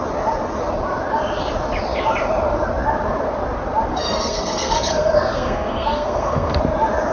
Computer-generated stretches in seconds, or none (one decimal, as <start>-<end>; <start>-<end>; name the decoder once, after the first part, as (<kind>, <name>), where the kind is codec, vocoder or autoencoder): 3.9-6.6 (codec, SNAC)